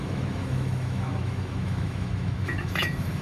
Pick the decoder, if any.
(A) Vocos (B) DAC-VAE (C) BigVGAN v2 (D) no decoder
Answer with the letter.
B